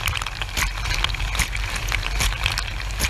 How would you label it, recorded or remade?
recorded